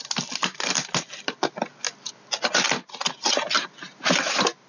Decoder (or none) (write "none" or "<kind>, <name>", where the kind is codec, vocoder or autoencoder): none